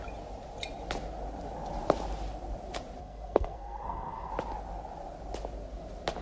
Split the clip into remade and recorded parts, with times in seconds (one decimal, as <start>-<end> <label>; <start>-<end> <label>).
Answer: 0.0-3.0 recorded; 3.0-4.3 remade; 4.3-6.2 recorded